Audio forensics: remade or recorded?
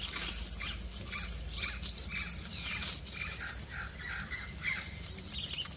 recorded